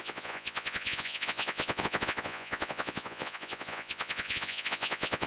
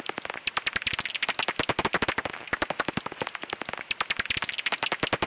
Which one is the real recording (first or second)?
second